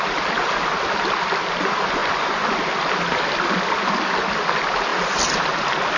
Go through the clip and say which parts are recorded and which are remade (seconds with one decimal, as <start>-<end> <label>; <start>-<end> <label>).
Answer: 0.0-2.0 recorded; 2.0-2.6 remade; 2.6-6.0 recorded